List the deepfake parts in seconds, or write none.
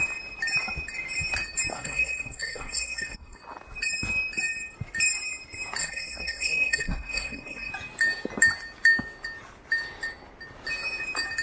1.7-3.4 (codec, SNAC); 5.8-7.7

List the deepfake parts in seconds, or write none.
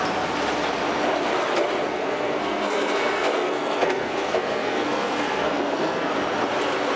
1.9-6.1 (codec, SNAC)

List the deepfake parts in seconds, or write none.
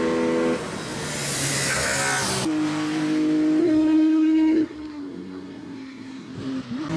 3.6-6.3 (codec, SNAC)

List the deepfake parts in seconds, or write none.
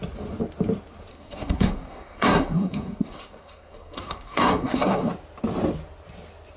1.1-5.1 (codec, SNAC)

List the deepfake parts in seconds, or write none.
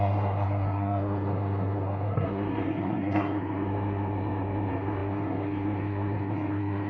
0.0-6.9 (codec, SNAC)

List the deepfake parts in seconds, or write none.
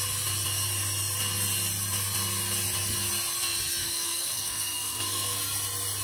3.8-5.4 (codec, SNAC)